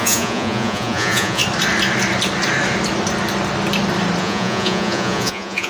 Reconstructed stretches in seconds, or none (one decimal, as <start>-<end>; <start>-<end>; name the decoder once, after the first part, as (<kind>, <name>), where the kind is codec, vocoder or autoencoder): 0.0-1.4 (vocoder, Vocos); 4.2-5.7

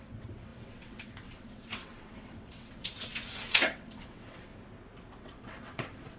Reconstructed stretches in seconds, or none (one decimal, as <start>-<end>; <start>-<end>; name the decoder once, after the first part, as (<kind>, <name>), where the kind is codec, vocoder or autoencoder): 0.0-4.5 (vocoder, WaveNeXt); 5.2-6.2

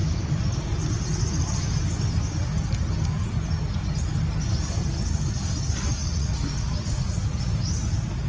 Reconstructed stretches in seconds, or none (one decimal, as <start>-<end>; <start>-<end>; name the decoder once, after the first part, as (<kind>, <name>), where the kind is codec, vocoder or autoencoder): 6.0-7.5 (vocoder, Vocos)

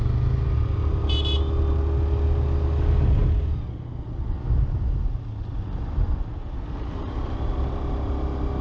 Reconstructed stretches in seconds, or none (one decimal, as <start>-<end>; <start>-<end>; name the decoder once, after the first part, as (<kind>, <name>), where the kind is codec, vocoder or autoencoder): none

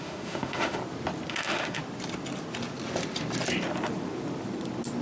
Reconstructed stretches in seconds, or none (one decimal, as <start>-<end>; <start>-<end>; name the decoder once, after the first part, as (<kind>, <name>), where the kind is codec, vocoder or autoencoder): 0.0-0.8 (autoencoder, DAC-VAE); 1.3-1.8

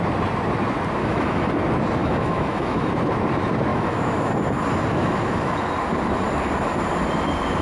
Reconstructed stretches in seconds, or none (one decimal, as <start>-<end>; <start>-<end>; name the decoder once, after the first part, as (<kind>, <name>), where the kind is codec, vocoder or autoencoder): 1.0-1.5 (autoencoder, DAC-VAE); 2.0-2.9; 3.7-4.3; 4.9-5.6

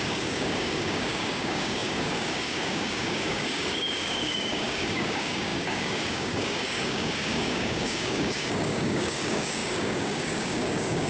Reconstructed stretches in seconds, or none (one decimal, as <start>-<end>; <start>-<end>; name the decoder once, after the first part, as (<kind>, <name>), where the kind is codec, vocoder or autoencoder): 0.0-11.1 (codec, DAC)